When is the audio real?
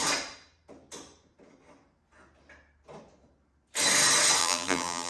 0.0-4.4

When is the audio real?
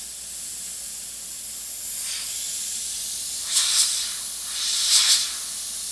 0.0-1.9; 5.4-5.9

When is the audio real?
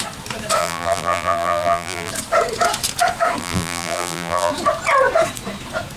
0.0-0.6; 2.1-3.4; 4.5-6.0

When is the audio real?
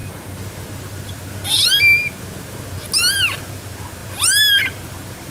0.0-5.3